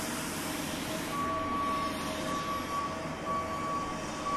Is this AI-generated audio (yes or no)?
no